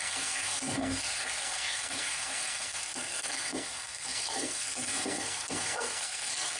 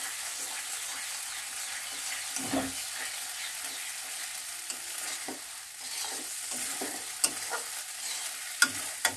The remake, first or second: first